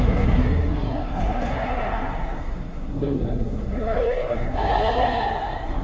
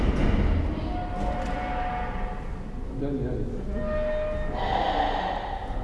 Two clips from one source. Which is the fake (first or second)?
first